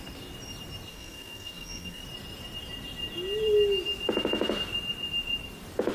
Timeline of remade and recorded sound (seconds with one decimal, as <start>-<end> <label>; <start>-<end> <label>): 0.0-0.9 recorded; 0.9-2.0 remade; 2.0-5.9 recorded